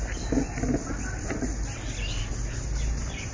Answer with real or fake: real